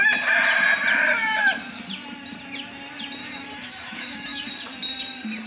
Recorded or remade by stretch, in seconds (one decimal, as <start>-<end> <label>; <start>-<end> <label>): 0.0-3.2 recorded; 3.2-4.5 remade; 4.5-5.5 recorded